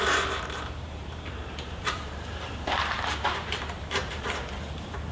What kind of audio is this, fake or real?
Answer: fake